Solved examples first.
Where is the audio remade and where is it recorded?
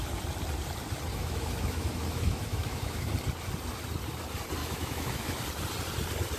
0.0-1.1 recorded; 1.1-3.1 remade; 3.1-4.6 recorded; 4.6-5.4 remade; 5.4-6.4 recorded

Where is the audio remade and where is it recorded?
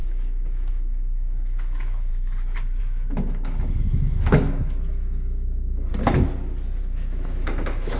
0.0-2.1 remade; 2.1-2.8 recorded; 2.8-5.9 remade; 5.9-6.8 recorded; 6.8-8.0 remade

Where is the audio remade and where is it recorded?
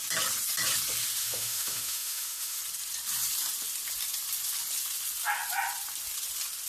0.0-1.2 recorded; 1.2-2.6 remade; 2.6-6.7 recorded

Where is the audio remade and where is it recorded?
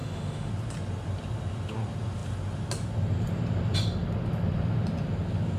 0.0-0.5 remade; 0.5-5.6 recorded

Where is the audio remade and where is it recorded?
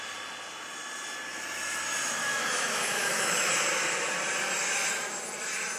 0.0-2.2 recorded; 2.2-3.5 remade; 3.5-5.8 recorded